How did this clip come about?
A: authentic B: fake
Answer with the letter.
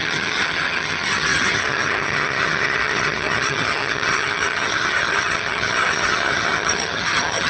B